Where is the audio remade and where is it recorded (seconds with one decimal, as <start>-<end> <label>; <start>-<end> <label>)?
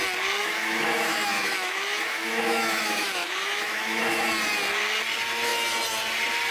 0.0-0.4 recorded; 0.4-4.3 remade; 4.3-6.5 recorded